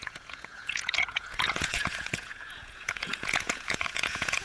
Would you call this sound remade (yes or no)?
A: yes